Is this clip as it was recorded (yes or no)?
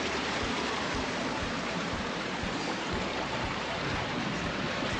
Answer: no